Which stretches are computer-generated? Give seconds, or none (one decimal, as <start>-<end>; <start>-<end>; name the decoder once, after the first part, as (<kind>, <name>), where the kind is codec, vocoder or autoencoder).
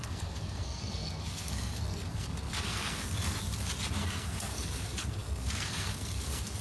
0.0-3.2 (codec, SNAC); 4.0-6.6